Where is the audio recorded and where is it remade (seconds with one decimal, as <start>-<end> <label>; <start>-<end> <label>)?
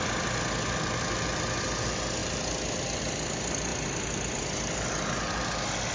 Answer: 0.0-5.9 recorded